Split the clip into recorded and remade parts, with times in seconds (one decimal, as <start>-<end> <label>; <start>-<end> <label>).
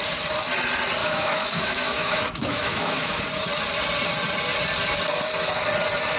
0.0-1.0 recorded; 1.0-3.2 remade; 3.2-6.2 recorded